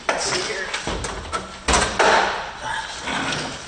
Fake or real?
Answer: real